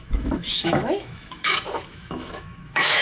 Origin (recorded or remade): remade